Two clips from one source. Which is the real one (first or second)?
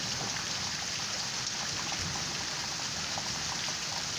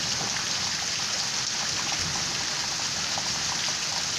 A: second